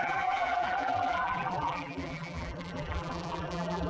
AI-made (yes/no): yes